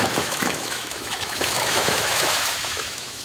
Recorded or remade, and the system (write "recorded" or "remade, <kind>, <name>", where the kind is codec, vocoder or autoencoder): remade, autoencoder, DAC-VAE